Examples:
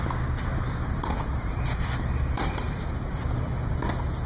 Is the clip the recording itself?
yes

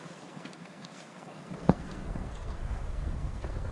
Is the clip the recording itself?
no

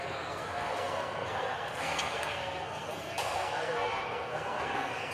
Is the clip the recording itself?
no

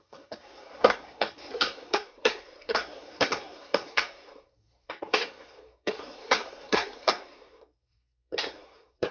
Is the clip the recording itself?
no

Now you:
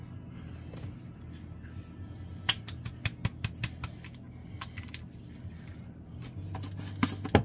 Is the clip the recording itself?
yes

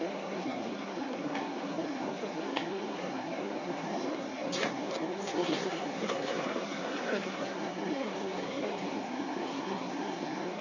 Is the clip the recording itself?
no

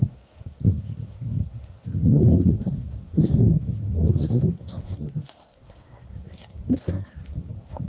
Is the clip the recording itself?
no